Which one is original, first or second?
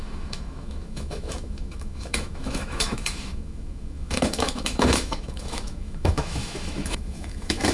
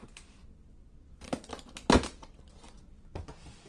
second